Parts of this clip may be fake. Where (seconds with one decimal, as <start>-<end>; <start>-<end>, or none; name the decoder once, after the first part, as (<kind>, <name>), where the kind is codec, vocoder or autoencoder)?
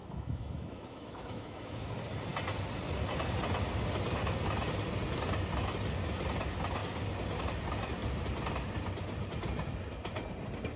0.0-1.9 (autoencoder, DAC-VAE)